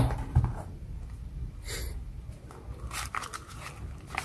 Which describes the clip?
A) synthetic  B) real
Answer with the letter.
B